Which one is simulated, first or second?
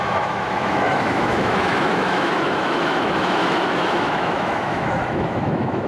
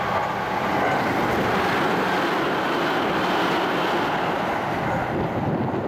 first